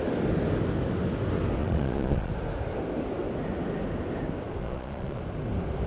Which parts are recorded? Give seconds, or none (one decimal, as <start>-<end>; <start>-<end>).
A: 0.0-1.6; 2.3-4.6; 5.2-5.9